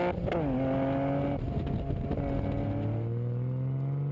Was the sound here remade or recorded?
recorded